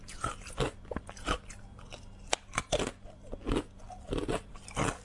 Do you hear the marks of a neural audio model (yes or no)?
no